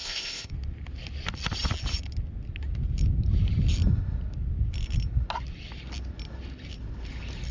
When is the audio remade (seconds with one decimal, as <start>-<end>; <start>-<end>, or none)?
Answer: 0.0-0.5